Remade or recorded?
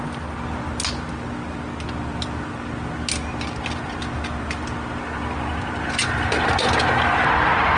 recorded